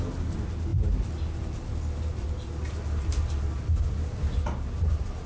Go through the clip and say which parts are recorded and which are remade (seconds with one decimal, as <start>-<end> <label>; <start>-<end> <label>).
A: 0.0-5.3 recorded